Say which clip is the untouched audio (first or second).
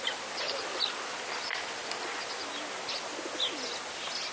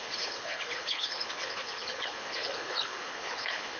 first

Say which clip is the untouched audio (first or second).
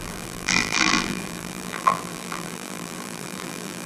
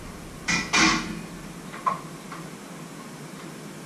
second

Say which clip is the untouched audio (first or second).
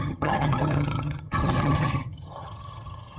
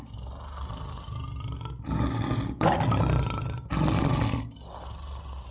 second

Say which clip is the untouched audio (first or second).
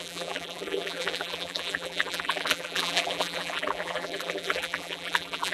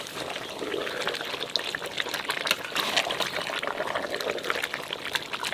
second